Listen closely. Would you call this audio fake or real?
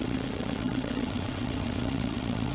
fake